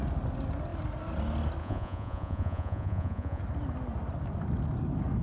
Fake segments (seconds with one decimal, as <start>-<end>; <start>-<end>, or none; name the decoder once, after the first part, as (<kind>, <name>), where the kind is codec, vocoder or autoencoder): 1.6-3.4 (vocoder, Vocos)